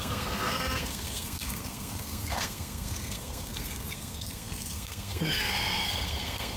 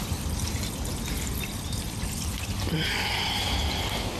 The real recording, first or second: second